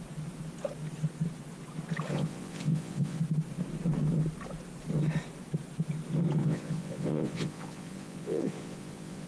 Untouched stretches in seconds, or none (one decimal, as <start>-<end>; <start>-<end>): 0.0-2.1; 3.2-6.4